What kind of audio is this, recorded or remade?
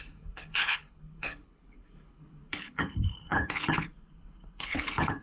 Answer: remade